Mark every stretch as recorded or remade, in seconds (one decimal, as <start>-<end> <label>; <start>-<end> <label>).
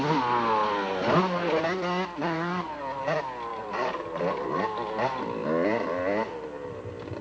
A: 0.0-2.2 recorded; 2.2-2.8 remade; 2.8-3.5 recorded; 3.5-4.2 remade; 4.2-7.2 recorded